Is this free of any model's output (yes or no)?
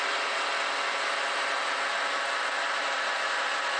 yes